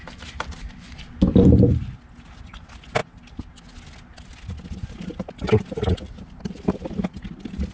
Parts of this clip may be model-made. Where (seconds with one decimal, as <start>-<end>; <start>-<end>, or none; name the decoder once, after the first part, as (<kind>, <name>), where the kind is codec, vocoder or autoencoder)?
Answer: none